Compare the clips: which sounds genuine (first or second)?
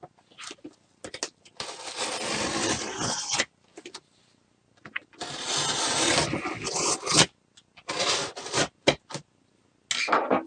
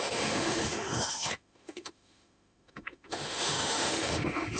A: first